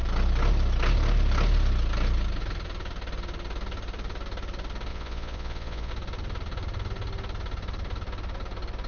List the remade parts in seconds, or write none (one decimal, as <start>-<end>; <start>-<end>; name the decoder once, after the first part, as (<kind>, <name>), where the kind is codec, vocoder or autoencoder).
4.9-5.9 (vocoder, Vocos)